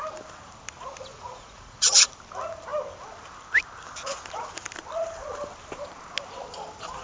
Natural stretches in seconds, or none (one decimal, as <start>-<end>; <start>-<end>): 0.0-1.1; 2.1-7.0